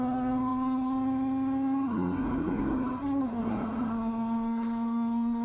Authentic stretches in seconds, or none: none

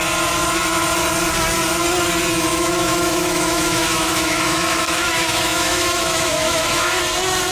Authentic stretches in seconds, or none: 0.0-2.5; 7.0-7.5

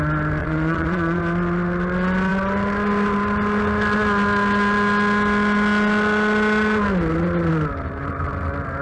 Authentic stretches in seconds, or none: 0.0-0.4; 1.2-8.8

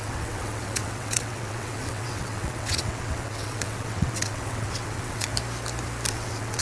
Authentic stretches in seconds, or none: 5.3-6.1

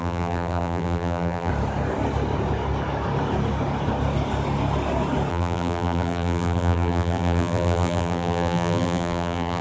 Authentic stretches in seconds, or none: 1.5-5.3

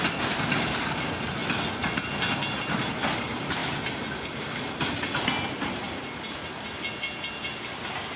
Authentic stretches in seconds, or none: 0.0-8.2

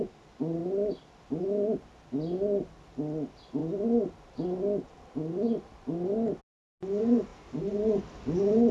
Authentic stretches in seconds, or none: 0.0-8.7

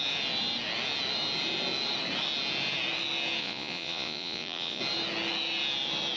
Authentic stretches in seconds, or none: 0.0-3.4; 4.8-6.2